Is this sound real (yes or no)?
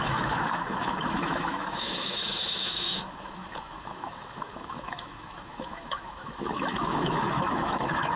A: no